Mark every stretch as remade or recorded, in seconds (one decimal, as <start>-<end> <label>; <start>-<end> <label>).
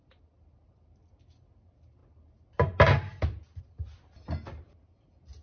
0.0-5.4 recorded